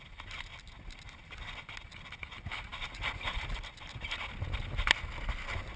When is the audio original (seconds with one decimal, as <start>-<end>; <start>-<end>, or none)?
0.0-5.8